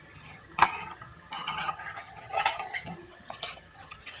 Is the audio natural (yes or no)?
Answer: no